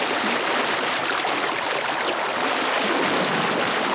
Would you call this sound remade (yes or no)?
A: no